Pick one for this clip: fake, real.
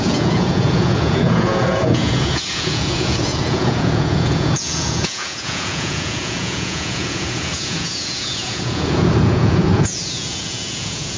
fake